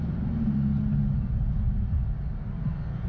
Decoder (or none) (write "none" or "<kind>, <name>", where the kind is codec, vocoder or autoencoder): none